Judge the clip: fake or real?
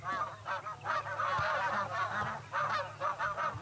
real